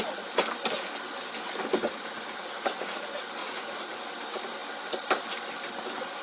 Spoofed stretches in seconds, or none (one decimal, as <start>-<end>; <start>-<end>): 1.8-3.0; 3.4-4.0